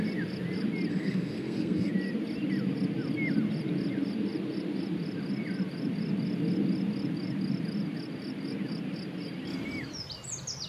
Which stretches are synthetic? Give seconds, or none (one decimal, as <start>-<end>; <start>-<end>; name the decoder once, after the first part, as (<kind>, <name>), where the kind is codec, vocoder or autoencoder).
0.9-1.9 (codec, SNAC)